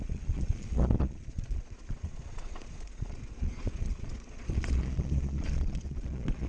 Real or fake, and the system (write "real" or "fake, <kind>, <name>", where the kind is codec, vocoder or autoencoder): fake, vocoder, Vocos